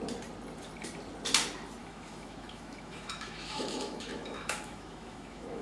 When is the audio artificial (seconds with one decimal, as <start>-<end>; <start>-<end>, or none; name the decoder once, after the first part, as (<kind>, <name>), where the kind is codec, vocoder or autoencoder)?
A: 1.8-5.6 (autoencoder, DAC-VAE)